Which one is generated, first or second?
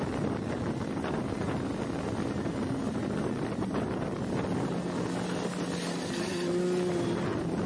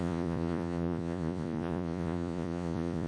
second